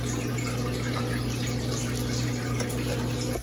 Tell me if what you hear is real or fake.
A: real